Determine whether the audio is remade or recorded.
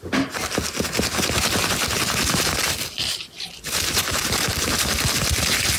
recorded